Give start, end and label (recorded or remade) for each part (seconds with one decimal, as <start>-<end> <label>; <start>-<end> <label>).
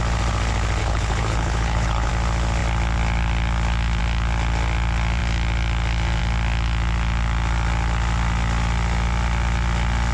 0.0-0.8 recorded; 0.8-2.1 remade; 2.1-10.1 recorded